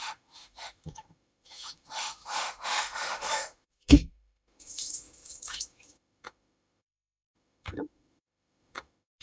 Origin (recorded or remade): remade